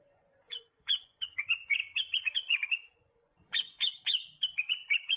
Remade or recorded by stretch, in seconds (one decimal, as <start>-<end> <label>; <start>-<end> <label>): 0.0-5.2 remade

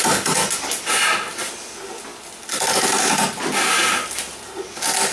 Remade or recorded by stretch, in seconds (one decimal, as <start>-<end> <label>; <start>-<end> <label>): 0.0-5.1 recorded

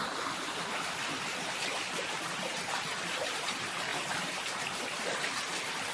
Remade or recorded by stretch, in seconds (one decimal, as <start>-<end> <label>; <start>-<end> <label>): 0.0-3.9 remade; 3.9-4.6 recorded; 4.6-5.9 remade